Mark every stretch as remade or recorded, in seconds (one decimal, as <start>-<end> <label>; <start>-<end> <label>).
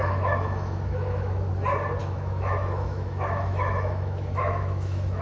0.0-1.5 remade; 1.5-2.0 recorded; 2.0-5.2 remade